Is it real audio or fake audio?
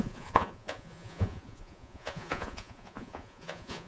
fake